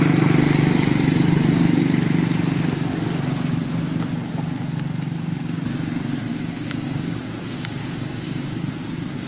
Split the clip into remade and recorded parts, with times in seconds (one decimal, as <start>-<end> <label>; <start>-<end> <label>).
0.0-6.3 recorded; 6.3-8.6 remade; 8.6-9.3 recorded